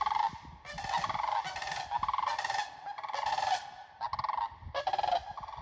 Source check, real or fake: real